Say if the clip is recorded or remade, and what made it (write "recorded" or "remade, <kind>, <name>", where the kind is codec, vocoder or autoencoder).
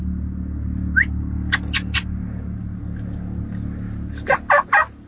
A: recorded